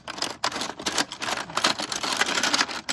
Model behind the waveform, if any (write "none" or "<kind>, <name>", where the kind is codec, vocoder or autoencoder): none